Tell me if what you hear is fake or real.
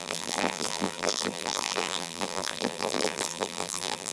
fake